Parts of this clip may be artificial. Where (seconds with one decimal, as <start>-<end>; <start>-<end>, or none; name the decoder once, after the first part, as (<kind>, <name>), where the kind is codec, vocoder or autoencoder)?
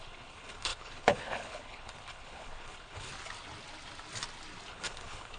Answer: 0.0-3.1 (codec, HILCodec); 4.7-5.4